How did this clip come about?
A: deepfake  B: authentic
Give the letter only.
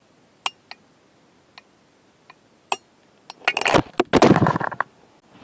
B